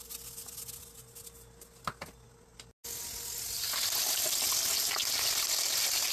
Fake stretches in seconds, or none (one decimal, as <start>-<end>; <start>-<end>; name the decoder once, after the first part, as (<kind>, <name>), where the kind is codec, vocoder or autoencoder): none